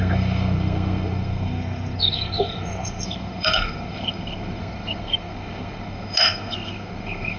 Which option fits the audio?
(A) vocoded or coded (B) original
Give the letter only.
A